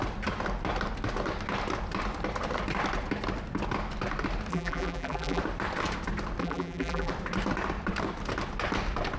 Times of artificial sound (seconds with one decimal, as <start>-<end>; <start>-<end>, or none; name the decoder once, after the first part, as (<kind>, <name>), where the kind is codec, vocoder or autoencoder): 4.5-5.4 (vocoder, BigVGAN v2); 6.4-7.1